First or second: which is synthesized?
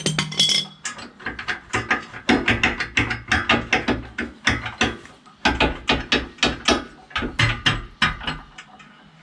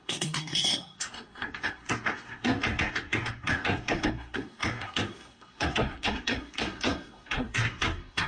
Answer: second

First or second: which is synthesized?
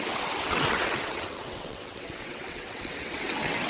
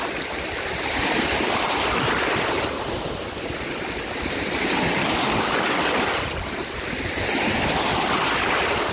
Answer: first